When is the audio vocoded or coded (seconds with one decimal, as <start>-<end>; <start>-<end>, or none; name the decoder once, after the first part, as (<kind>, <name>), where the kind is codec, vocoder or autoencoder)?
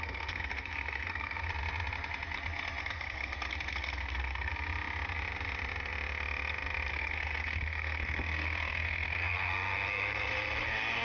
0.0-1.5 (codec, SNAC); 2.8-4.5; 6.9-11.0